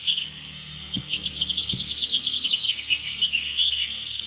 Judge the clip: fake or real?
fake